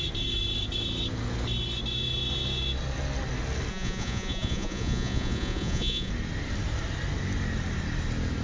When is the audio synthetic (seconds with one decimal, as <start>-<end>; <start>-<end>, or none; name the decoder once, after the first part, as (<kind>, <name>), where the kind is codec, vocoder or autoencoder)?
3.7-6.1 (vocoder, Vocos)